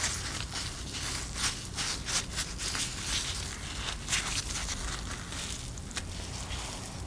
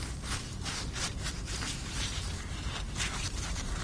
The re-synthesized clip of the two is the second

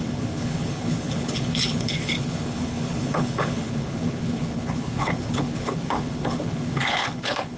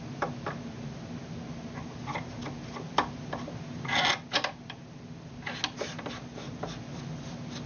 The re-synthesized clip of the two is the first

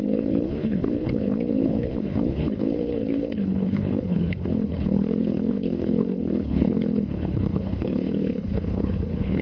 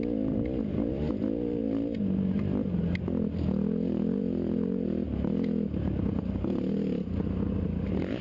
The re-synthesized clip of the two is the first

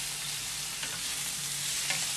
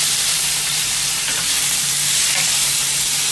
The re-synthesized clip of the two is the second